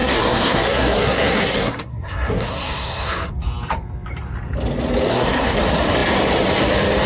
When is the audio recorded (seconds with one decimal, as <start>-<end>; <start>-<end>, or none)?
3.3-5.1; 5.6-7.1